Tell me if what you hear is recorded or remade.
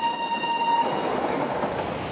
recorded